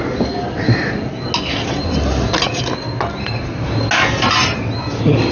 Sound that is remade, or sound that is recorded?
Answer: recorded